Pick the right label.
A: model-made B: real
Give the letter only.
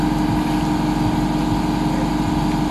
B